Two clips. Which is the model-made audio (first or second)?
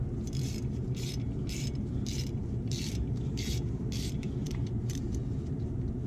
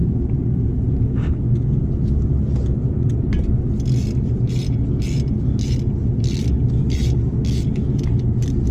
first